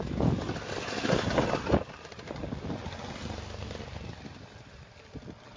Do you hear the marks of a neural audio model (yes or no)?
no